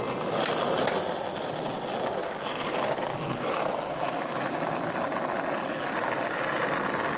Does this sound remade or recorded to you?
recorded